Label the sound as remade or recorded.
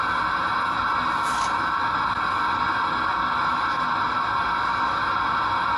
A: recorded